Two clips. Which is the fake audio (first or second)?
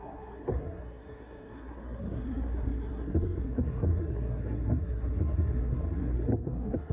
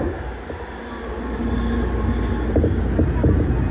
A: first